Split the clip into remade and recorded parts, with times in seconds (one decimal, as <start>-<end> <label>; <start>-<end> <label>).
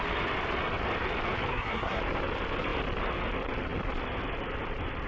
0.0-1.5 recorded; 1.5-2.0 remade; 2.0-5.1 recorded